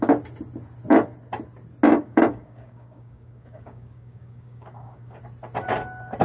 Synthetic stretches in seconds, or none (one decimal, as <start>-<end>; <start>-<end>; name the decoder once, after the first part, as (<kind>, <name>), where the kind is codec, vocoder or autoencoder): 1.9-5.2 (codec, DAC)